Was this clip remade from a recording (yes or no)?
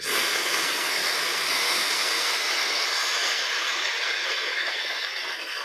yes